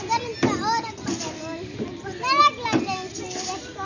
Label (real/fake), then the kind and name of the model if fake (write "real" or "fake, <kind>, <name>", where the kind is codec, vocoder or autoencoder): real